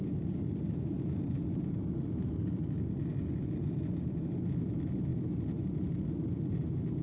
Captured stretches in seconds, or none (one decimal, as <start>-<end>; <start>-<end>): 0.0-7.0